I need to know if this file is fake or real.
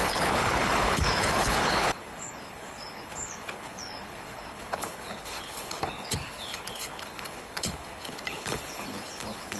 fake